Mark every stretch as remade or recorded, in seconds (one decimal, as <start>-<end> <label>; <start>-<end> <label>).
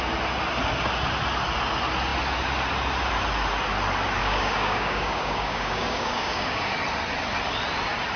0.0-4.2 recorded; 4.2-6.7 remade; 6.7-8.2 recorded